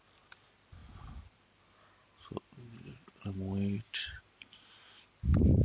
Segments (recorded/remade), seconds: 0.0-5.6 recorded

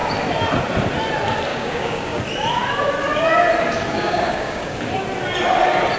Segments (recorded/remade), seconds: 0.0-1.5 recorded; 1.5-2.2 remade; 2.2-3.9 recorded; 3.9-4.8 remade; 4.8-6.0 recorded